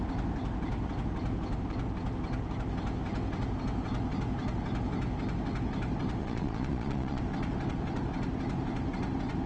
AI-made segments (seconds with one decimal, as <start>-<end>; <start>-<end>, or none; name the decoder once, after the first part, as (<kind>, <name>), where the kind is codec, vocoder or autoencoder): 6.2-7.2 (vocoder, Vocos)